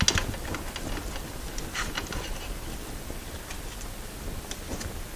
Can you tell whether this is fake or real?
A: real